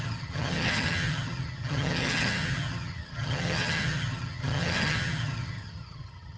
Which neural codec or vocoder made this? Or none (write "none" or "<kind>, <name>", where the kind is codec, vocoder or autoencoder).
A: vocoder, HiFi-GAN